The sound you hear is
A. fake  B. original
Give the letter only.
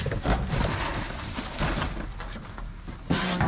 B